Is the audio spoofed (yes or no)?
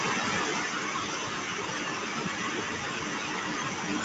no